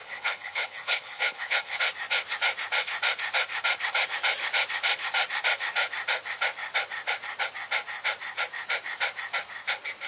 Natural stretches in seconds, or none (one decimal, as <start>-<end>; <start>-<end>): 1.8-10.1